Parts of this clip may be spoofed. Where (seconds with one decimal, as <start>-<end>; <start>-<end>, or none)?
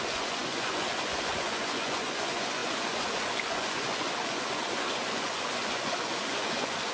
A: 0.0-6.9